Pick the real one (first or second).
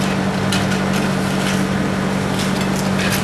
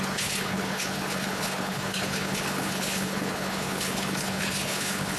first